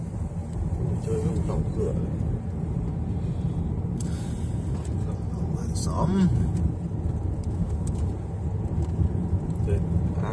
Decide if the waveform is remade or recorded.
remade